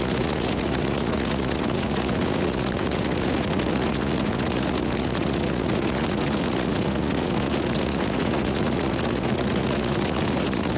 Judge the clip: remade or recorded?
remade